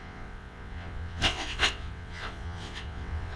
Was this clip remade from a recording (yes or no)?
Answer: yes